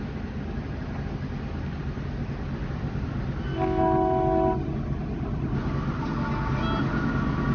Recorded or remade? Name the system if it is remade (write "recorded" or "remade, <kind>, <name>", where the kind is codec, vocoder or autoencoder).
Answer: recorded